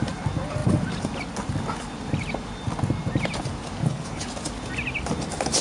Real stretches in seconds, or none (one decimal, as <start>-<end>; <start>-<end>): 0.0-3.8; 4.3-5.6

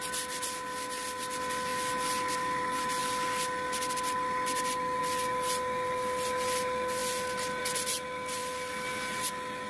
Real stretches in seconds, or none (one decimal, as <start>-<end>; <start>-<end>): 0.0-9.7

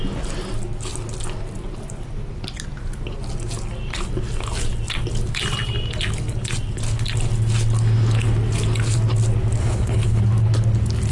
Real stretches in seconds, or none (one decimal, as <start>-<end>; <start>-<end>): 0.0-9.6; 10.2-11.1

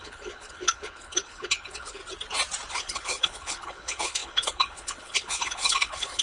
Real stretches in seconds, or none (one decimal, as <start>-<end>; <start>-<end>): 2.0-2.7

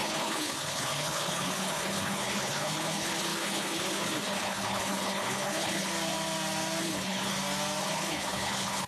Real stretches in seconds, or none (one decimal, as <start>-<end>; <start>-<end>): 5.9-6.8; 7.3-7.8

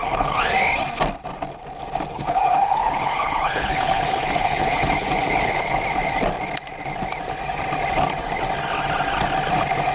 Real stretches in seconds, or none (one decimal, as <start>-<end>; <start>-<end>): 0.5-2.1; 5.8-9.9

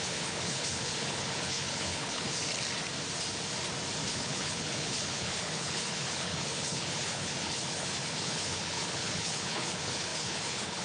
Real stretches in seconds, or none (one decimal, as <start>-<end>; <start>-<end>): 2.4-4.1

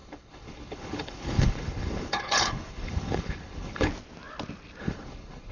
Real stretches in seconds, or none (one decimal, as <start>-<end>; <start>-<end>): 3.9-4.8